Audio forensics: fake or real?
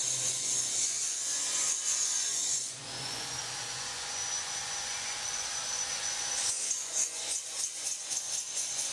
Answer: fake